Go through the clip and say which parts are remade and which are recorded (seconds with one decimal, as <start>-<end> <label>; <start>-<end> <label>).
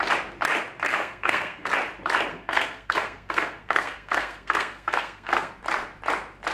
0.0-0.9 recorded; 0.9-1.7 remade; 1.7-2.3 recorded; 2.3-5.5 remade; 5.5-6.5 recorded